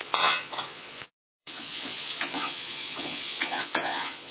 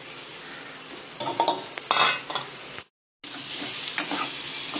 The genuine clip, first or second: second